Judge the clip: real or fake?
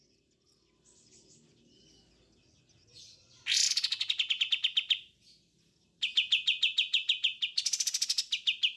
real